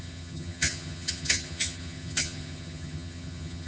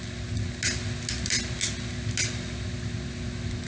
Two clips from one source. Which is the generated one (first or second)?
first